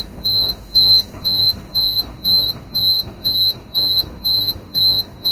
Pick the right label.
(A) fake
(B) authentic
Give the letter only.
A